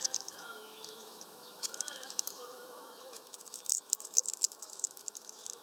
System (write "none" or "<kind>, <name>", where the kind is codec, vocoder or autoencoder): autoencoder, DAC-VAE